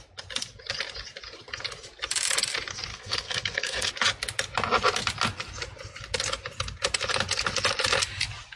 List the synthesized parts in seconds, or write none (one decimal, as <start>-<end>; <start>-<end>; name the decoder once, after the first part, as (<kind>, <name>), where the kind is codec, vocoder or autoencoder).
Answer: 2.9-3.9 (codec, SNAC)